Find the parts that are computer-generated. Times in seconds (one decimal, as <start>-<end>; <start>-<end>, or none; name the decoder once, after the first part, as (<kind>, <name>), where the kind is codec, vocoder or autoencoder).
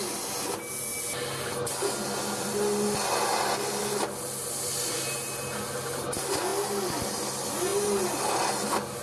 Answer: none